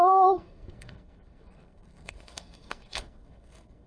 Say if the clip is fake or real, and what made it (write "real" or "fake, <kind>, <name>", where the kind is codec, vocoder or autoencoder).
fake, codec, SNAC